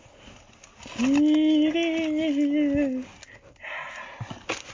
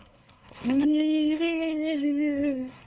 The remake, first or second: second